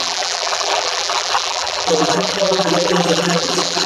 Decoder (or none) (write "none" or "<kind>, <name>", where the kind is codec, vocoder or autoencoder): vocoder, BigVGAN v2